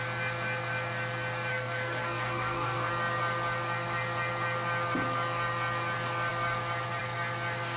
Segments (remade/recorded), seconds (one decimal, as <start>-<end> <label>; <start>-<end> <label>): 0.0-1.5 recorded; 1.5-2.9 remade; 2.9-7.8 recorded